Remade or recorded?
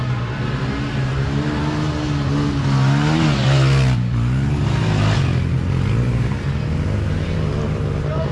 recorded